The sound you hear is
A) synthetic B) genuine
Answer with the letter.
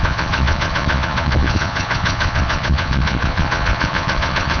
A